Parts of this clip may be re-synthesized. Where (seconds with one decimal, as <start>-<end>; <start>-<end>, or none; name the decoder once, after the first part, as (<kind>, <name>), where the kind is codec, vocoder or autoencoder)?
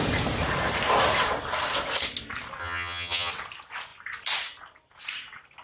2.6-3.3 (vocoder, HiFi-GAN)